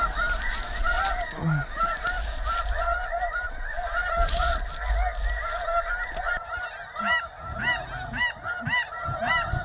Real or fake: real